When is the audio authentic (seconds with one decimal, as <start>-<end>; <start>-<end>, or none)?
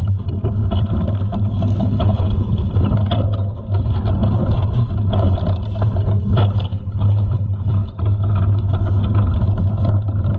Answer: 0.0-1.8; 2.7-6.7; 7.9-10.4